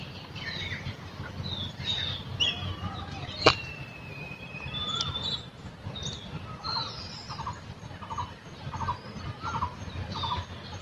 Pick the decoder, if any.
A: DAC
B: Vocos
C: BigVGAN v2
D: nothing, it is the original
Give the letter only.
D